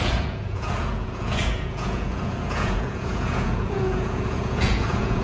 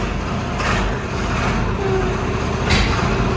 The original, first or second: second